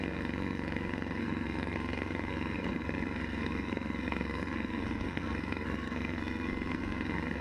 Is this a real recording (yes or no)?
no